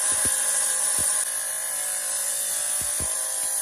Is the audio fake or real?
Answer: real